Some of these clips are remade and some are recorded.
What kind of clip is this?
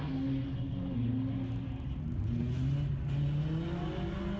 recorded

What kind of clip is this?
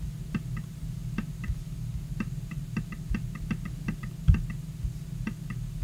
recorded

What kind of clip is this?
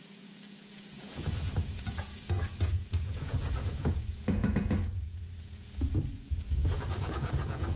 remade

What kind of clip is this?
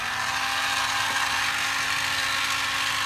recorded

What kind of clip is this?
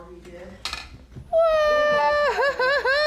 recorded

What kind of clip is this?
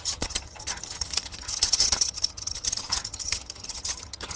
remade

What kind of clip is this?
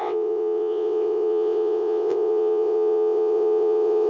remade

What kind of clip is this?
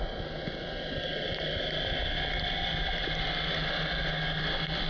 recorded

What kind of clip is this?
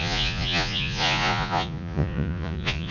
remade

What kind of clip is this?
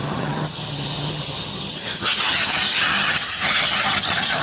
remade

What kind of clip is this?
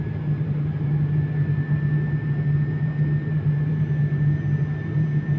recorded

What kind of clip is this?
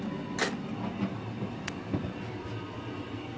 recorded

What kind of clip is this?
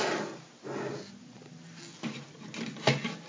recorded